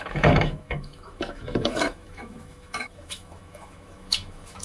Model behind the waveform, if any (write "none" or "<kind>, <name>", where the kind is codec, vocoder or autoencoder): autoencoder, DAC-VAE